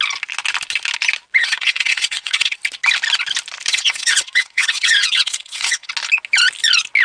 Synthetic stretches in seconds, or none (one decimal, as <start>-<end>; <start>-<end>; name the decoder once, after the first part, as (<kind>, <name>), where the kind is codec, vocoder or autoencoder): 1.4-2.6 (vocoder, WaveNeXt); 3.7-5.9